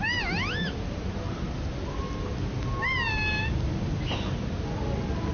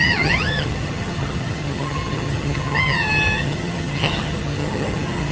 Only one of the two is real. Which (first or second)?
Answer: first